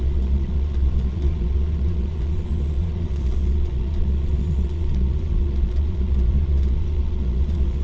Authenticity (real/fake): fake